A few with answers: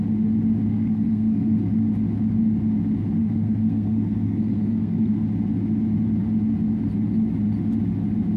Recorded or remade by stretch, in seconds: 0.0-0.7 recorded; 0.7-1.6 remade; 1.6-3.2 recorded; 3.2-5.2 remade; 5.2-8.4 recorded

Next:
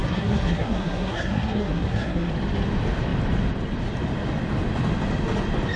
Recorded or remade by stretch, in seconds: 0.0-2.3 remade; 2.3-5.8 recorded

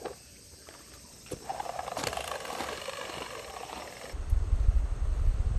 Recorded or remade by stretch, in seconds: 0.0-5.6 recorded